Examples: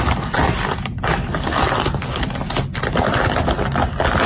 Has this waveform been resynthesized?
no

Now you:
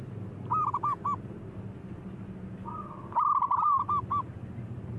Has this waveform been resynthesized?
no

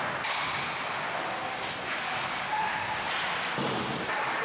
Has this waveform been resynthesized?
yes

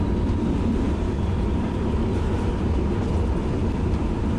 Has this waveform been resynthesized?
yes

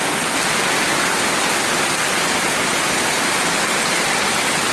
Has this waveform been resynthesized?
no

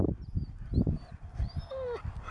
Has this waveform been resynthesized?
no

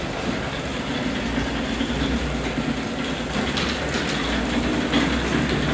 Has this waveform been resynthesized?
no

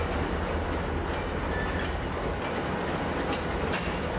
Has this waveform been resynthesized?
no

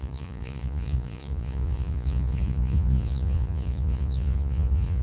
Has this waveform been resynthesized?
yes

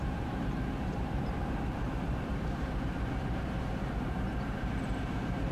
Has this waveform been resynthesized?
yes